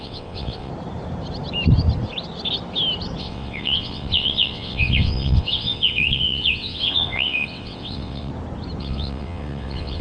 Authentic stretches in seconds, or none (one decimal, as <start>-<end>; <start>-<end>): 0.7-3.2; 8.3-8.8